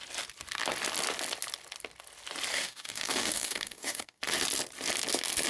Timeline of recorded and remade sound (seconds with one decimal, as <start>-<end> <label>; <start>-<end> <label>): 0.0-2.5 recorded; 2.5-4.2 remade; 4.2-5.5 recorded